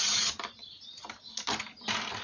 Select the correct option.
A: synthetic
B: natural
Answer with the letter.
B